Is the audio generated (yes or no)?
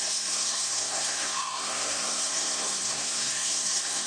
yes